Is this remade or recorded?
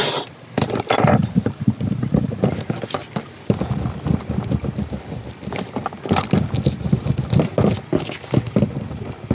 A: recorded